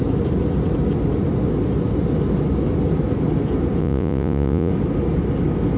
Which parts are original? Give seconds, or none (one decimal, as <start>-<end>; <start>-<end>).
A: 0.0-3.8; 4.7-5.8